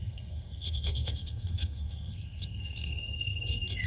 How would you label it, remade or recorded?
remade